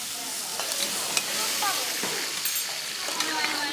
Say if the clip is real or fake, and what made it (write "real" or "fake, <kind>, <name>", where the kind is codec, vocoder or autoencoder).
real